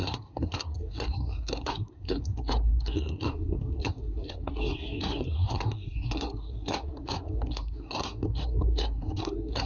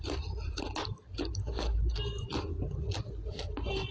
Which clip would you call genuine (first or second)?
second